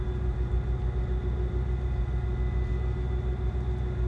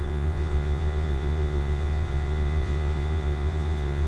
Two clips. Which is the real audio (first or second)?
first